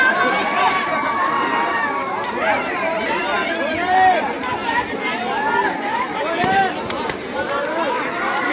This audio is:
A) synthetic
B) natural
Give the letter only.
A